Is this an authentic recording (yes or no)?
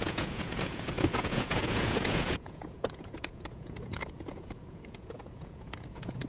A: no